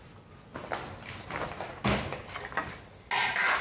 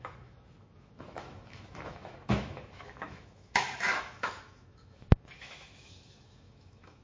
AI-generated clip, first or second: second